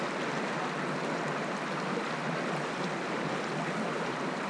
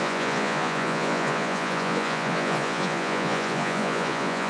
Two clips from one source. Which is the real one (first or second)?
first